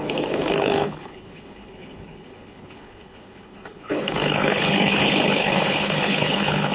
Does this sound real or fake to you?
fake